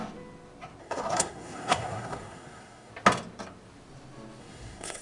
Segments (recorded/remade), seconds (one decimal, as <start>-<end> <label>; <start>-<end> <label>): 0.0-0.8 recorded; 0.8-2.9 remade; 2.9-4.4 recorded; 4.4-5.0 remade